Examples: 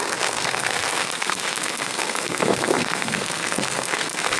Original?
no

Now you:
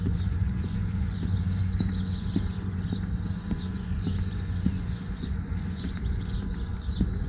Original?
no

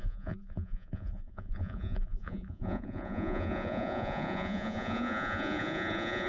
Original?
no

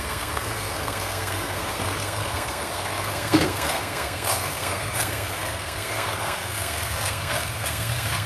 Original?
no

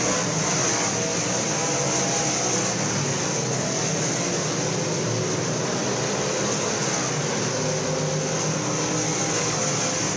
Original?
yes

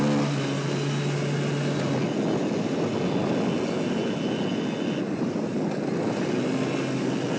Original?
yes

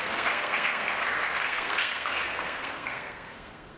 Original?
no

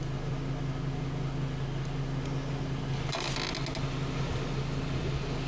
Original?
yes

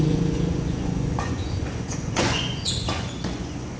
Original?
no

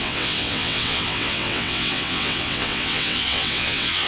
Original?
no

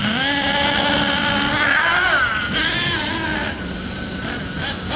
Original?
yes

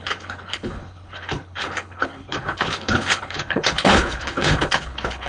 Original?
no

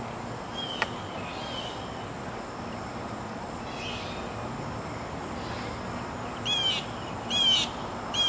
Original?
yes